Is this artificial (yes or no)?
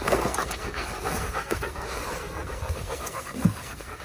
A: yes